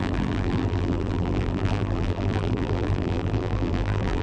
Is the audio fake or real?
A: fake